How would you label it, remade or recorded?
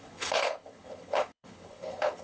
remade